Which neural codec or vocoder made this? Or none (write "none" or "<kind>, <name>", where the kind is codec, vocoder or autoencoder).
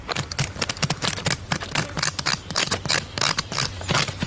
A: vocoder, BigVGAN v2